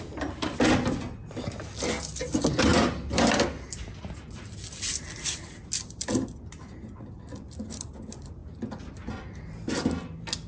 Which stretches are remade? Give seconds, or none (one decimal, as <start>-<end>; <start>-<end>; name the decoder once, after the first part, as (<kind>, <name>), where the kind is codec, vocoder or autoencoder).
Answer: none